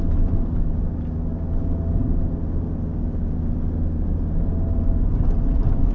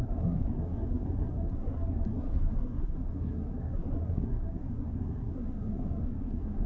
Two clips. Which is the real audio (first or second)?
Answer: first